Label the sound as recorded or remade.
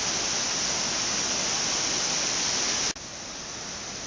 recorded